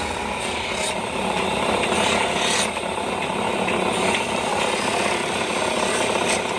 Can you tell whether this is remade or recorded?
recorded